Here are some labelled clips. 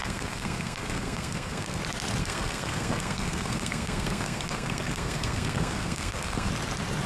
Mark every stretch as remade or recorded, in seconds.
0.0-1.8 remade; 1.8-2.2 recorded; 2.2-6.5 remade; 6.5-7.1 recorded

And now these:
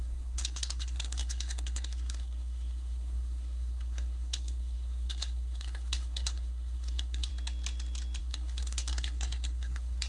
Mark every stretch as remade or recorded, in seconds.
0.0-7.3 remade; 7.3-8.2 recorded; 8.2-10.1 remade